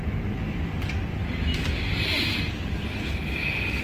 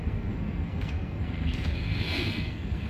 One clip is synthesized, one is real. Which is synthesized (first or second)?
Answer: second